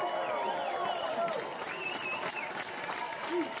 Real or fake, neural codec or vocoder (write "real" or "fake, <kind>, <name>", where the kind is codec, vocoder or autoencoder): real